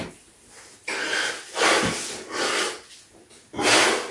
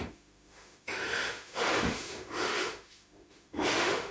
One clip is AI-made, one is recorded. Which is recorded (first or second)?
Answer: first